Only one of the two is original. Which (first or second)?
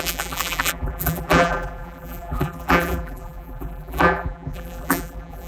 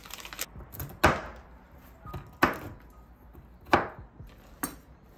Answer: second